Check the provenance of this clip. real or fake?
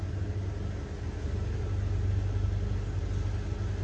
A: real